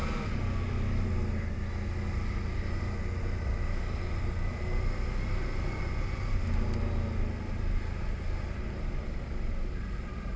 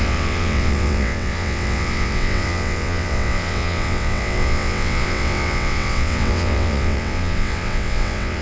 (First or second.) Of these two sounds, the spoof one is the second